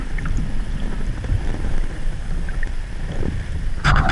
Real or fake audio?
fake